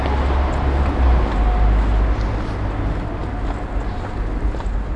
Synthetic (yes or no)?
no